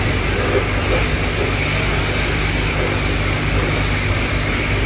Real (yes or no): yes